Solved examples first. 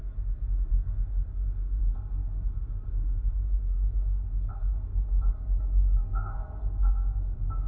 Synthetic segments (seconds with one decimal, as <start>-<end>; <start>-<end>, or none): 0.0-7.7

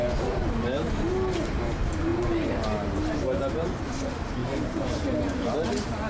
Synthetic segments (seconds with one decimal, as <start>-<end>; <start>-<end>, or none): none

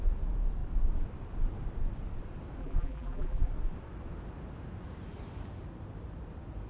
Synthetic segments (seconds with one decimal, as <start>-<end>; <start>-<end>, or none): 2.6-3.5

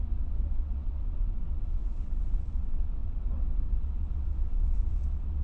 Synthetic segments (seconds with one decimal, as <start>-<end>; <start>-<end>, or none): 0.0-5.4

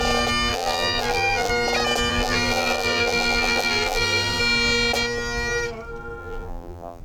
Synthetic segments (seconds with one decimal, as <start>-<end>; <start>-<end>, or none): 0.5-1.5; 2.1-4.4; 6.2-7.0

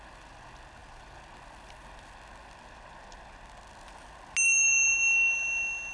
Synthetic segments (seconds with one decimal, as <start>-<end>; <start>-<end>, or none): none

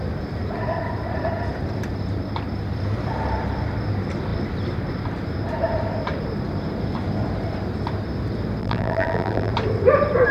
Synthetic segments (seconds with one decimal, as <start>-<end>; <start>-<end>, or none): 8.6-9.5